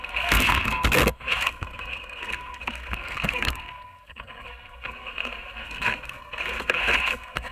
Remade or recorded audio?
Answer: remade